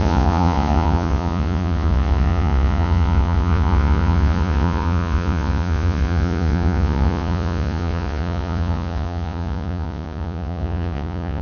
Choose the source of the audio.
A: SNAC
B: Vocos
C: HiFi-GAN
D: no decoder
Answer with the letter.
B